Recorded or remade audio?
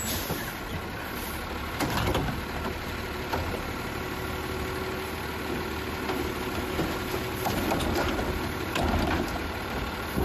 recorded